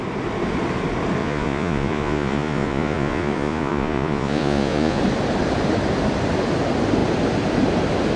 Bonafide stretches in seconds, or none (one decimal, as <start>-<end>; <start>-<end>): 0.0-1.2; 5.0-8.2